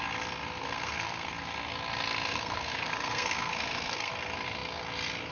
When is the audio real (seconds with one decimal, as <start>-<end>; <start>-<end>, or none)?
0.0-0.6; 1.3-2.3; 4.1-5.3